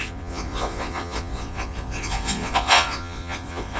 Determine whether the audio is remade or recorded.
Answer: remade